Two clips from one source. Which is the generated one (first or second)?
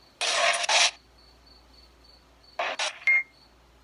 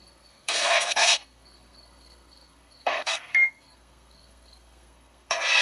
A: second